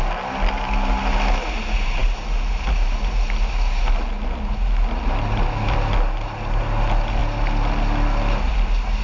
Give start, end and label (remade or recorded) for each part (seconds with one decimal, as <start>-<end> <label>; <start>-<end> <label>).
0.0-9.0 recorded